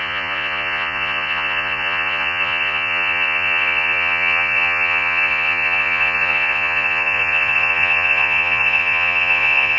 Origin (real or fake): fake